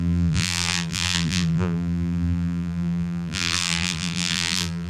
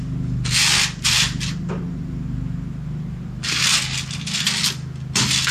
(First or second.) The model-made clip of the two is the first